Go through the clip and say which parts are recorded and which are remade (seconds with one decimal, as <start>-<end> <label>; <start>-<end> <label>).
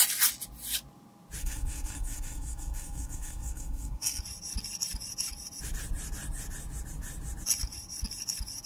0.0-1.4 recorded; 1.4-4.2 remade; 4.2-8.7 recorded